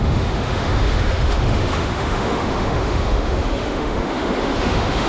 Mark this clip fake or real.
fake